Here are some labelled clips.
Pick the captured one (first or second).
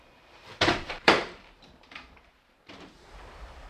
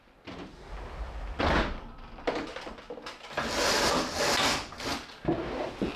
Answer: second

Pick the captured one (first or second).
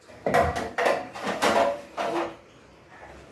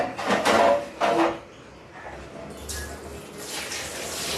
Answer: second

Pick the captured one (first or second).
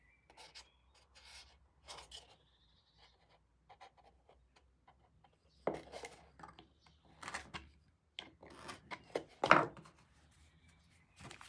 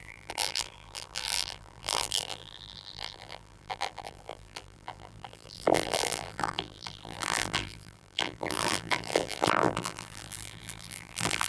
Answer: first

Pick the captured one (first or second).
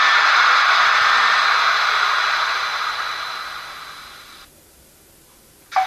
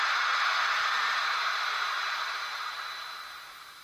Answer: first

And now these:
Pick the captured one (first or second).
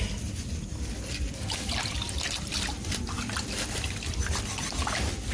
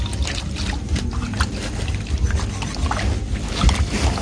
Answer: second